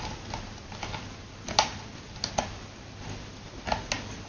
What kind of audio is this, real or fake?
real